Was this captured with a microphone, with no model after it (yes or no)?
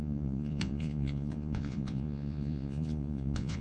no